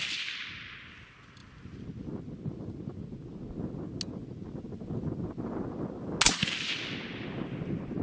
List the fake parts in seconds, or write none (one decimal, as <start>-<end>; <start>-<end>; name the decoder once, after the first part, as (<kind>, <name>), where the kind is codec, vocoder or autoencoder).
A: none